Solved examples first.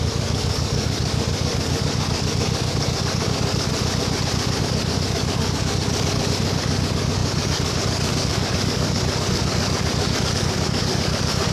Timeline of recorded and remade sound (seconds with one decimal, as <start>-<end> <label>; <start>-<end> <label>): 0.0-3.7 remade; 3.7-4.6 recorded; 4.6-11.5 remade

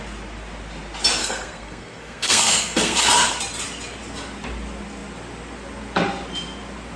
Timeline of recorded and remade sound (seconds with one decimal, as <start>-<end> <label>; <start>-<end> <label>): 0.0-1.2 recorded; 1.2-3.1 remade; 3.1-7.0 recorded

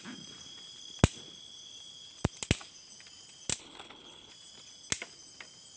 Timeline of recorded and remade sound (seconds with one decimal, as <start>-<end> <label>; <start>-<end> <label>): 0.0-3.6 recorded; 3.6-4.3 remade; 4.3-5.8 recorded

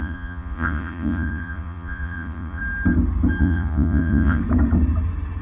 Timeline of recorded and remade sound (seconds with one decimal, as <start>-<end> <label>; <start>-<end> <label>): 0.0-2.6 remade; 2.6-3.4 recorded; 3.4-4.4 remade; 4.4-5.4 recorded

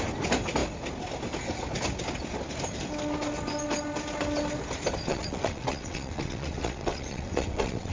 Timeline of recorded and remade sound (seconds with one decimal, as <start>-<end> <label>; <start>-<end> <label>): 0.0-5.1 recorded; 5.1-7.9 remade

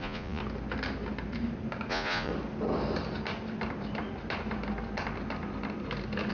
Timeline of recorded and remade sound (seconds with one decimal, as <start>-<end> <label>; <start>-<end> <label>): 0.0-0.4 remade; 0.4-1.9 recorded; 1.9-2.3 remade; 2.3-6.3 recorded

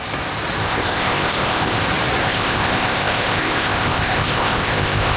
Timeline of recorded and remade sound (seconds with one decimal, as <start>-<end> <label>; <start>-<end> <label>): 0.0-0.6 recorded; 0.6-1.8 remade; 1.8-2.2 recorded; 2.2-5.2 remade

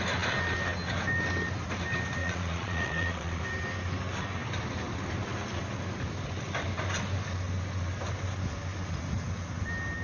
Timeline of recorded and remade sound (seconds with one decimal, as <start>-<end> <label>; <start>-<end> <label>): 0.0-2.2 recorded; 2.2-3.4 remade; 3.4-10.0 recorded